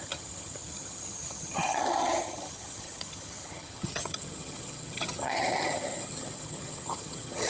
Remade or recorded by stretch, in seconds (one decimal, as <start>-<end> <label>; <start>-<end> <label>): 0.0-7.5 remade